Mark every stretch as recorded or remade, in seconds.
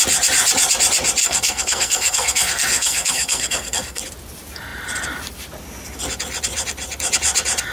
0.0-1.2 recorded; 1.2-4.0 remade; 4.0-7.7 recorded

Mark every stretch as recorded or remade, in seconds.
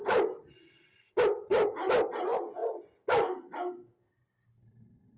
0.0-5.2 recorded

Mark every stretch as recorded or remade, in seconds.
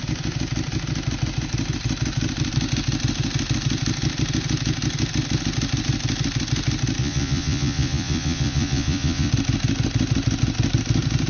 0.0-7.0 recorded; 7.0-9.3 remade; 9.3-11.3 recorded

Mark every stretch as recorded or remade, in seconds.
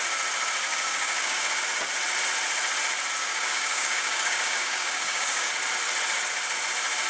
0.0-0.7 recorded; 0.7-1.6 remade; 1.6-3.2 recorded; 3.2-5.5 remade; 5.5-7.1 recorded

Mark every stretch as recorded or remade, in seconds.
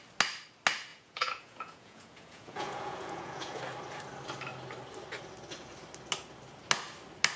0.0-0.9 recorded; 0.9-3.6 remade; 3.6-7.4 recorded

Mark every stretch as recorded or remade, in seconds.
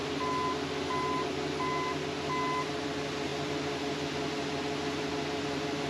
0.0-5.9 recorded